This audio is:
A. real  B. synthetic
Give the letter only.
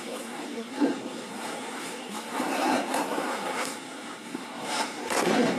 B